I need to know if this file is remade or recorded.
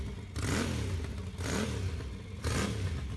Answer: recorded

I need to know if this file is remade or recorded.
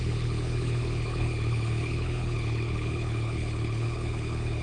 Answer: remade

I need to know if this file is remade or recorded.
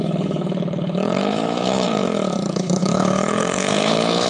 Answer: remade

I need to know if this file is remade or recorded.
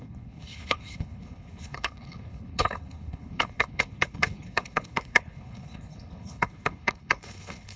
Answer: remade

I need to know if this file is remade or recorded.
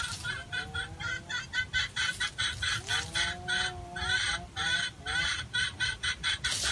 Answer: recorded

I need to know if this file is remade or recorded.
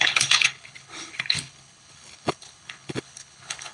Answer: remade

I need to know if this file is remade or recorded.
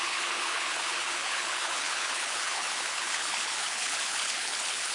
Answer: remade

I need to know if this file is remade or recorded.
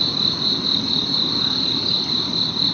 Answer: recorded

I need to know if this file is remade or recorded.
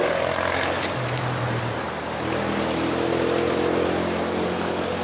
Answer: recorded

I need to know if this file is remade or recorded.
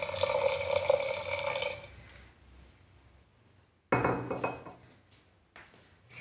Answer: recorded